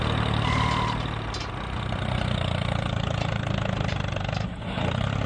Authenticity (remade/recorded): recorded